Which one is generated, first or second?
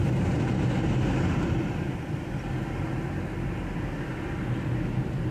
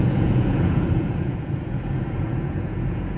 second